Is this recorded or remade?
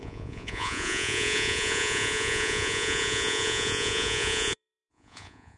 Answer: remade